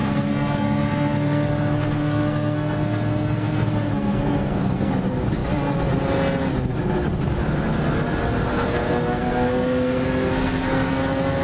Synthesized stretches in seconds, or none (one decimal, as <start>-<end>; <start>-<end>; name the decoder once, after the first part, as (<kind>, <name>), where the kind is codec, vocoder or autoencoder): 0.0-4.9 (codec, SNAC); 8.5-10.9